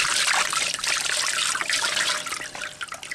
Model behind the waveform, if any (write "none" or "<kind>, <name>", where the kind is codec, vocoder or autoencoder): none